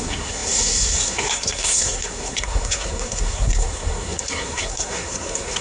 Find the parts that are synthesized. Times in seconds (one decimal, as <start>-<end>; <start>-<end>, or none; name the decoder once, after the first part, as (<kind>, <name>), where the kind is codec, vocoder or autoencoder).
0.0-5.6 (codec, SNAC)